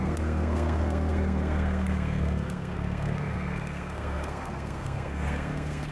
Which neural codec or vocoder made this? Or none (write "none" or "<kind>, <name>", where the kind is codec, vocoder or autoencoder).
codec, SNAC